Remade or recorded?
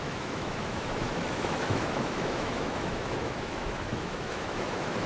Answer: remade